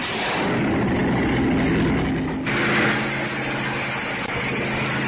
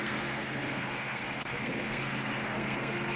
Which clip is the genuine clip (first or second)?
first